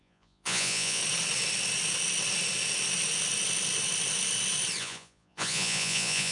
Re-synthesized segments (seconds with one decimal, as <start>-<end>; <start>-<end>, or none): 0.0-1.0; 4.8-6.3